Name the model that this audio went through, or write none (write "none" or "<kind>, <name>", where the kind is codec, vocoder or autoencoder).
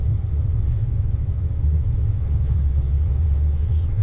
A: vocoder, WaveNeXt